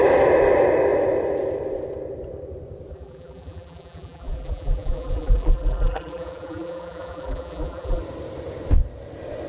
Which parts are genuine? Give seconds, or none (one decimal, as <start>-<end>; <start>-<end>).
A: 0.0-2.9; 8.0-9.5